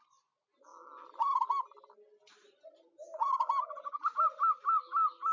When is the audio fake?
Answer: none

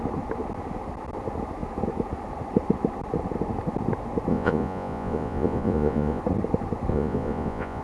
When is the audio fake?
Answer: 4.3-6.2 (vocoder, Vocos); 6.9-7.8

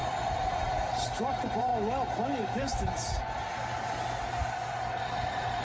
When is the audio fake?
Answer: 0.7-1.7 (vocoder, BigVGAN v2); 5.1-5.6